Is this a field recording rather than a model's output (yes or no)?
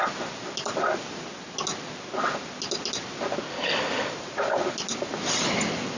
yes